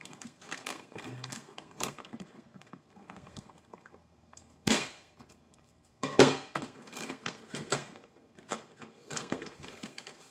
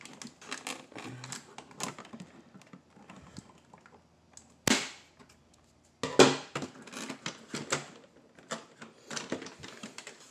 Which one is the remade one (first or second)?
first